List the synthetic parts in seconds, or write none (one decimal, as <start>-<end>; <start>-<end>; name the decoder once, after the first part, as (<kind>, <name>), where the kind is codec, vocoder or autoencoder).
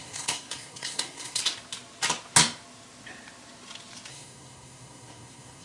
0.0-1.4 (codec, SNAC); 4.1-5.6